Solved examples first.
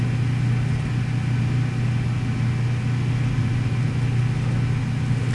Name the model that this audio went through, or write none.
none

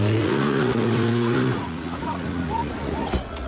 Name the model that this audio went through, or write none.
vocoder, Vocos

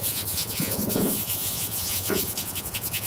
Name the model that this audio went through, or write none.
vocoder, Vocos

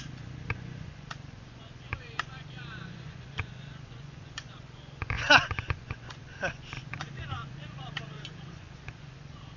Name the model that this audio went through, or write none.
vocoder, Vocos